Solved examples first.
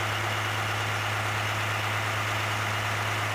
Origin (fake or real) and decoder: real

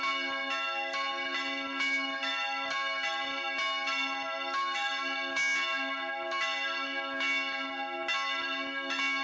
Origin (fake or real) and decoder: real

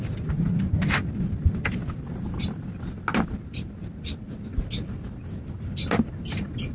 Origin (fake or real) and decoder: real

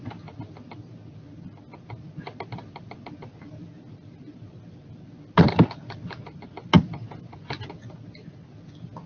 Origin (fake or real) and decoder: real